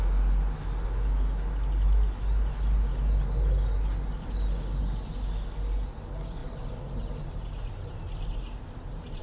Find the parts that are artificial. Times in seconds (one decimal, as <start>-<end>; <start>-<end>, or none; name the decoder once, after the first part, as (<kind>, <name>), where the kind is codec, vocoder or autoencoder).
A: none